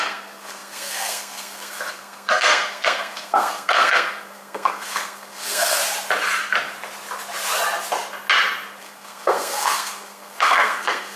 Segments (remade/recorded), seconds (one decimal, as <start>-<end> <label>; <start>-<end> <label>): 0.0-5.8 remade; 5.8-8.8 recorded; 8.8-11.2 remade